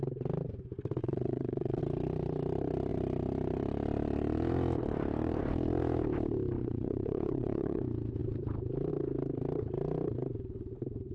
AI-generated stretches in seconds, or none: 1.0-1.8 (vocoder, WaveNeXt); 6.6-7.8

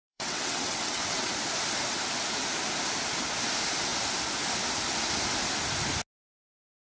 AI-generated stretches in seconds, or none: 0.0-1.3 (vocoder, WaveNeXt)

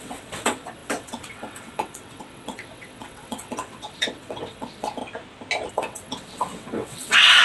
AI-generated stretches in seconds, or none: 0.0-5.0 (vocoder, WaveNeXt); 5.7-7.4

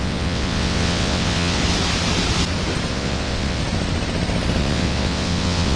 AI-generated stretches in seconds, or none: 0.0-1.6 (vocoder, WaveNeXt); 2.9-3.6; 4.6-5.8

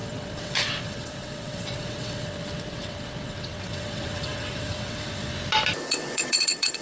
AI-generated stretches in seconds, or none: 0.0-5.3 (vocoder, WaveNeXt); 5.8-6.8